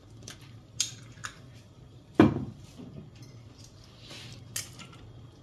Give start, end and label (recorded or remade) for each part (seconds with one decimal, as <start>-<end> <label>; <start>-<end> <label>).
0.0-5.4 recorded